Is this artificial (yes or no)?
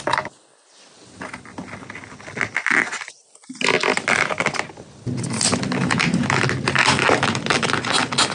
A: no